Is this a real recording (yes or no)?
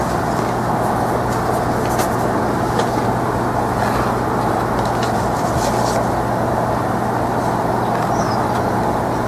yes